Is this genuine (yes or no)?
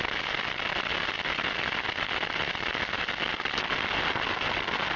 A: yes